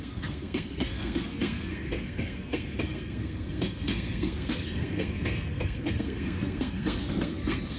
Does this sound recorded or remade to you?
remade